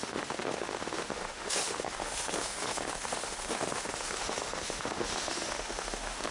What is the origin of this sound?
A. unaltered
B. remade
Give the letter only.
B